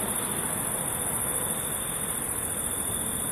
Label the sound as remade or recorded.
recorded